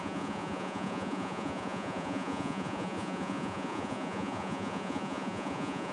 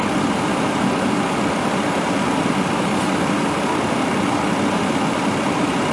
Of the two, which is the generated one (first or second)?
first